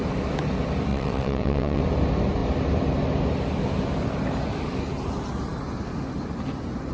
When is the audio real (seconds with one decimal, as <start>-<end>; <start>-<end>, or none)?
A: 0.0-0.9; 1.8-6.9